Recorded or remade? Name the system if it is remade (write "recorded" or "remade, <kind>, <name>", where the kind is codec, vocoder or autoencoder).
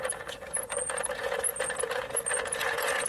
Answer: remade, vocoder, Vocos